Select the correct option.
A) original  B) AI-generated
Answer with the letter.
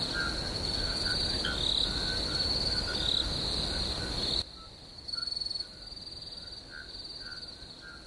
A